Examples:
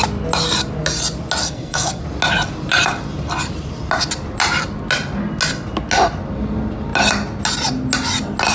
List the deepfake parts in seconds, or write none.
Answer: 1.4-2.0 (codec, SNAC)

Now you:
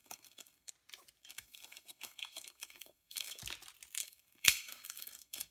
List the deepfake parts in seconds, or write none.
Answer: 0.0-0.7 (codec, SNAC); 1.2-3.4; 4.0-5.5

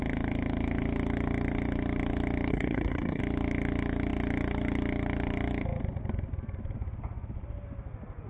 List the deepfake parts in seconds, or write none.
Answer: 2.5-3.2 (codec, SNAC)

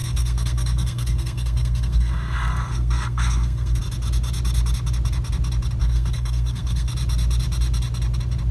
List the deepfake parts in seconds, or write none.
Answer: 0.0-3.8 (codec, SNAC); 5.8-6.9

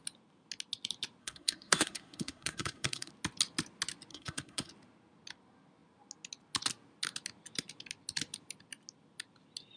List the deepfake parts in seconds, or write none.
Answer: 1.2-3.1 (codec, SNAC); 4.1-4.7

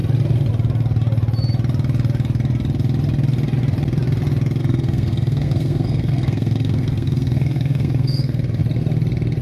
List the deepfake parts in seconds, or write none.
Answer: 4.6-8.6 (codec, SNAC)

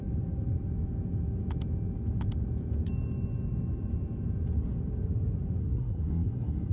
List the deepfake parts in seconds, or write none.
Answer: 5.6-6.7 (codec, SNAC)

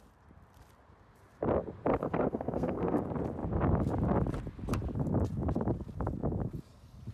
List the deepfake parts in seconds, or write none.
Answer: 2.0-3.0 (codec, SNAC)